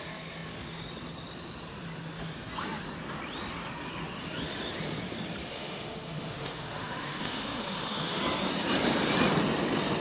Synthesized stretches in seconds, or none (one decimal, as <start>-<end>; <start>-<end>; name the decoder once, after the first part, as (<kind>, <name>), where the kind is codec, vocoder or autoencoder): 5.5-8.2 (autoencoder, DAC-VAE)